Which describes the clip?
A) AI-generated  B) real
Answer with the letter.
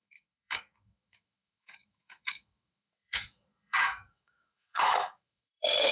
A